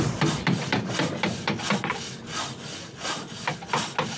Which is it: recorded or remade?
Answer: recorded